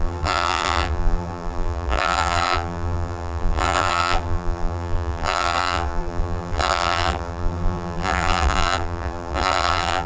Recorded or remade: remade